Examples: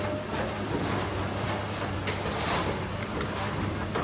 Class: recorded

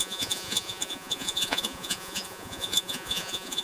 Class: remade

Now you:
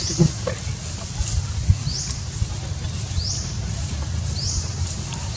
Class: recorded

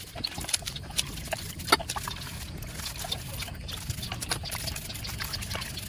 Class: recorded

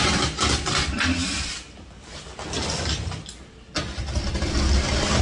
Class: recorded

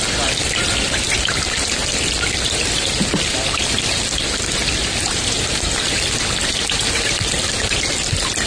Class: recorded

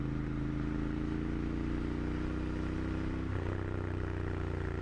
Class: recorded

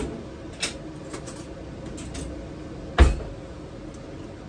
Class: recorded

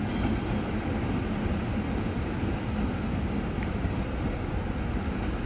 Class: recorded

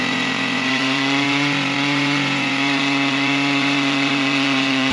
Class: remade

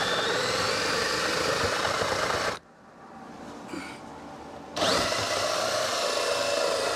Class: recorded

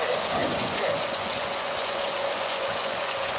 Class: remade